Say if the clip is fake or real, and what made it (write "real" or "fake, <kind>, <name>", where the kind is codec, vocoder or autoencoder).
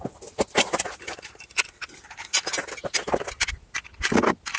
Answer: real